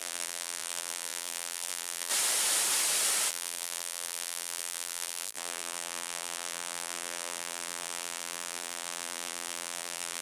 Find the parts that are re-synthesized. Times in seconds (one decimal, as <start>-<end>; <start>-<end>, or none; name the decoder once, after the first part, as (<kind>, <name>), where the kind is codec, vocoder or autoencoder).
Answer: 0.0-2.1 (vocoder, BigVGAN v2); 3.3-10.2